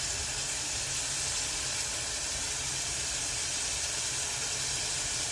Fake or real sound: real